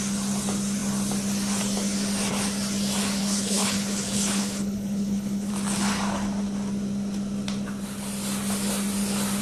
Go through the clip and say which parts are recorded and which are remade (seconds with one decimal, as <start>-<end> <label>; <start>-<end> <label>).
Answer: 0.0-3.2 recorded; 3.2-5.5 remade; 5.5-9.4 recorded

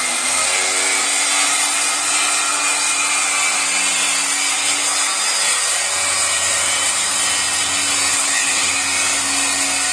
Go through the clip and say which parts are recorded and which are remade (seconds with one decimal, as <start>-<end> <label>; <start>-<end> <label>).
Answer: 0.0-8.1 recorded; 8.1-8.7 remade; 8.7-9.9 recorded